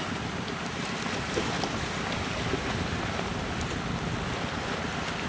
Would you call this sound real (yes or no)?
yes